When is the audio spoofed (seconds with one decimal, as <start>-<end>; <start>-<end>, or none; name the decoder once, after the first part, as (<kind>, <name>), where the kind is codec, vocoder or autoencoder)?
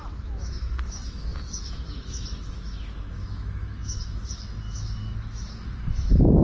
0.0-6.4 (autoencoder, DAC-VAE)